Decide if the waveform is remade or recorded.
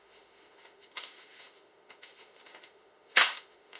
remade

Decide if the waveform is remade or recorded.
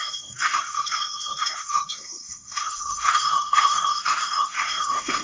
remade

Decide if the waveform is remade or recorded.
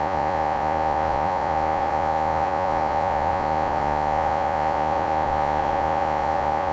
remade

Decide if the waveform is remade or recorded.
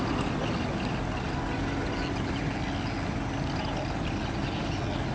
recorded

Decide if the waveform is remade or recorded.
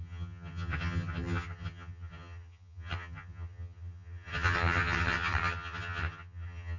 remade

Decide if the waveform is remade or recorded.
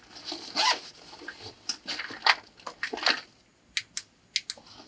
recorded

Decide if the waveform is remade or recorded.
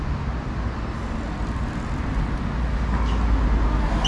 recorded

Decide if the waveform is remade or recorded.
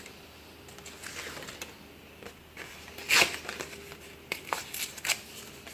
recorded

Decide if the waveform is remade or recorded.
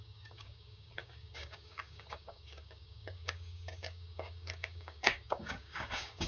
remade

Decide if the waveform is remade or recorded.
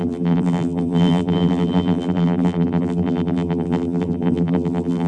remade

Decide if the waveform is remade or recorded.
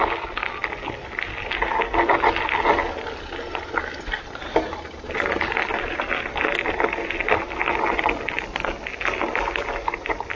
recorded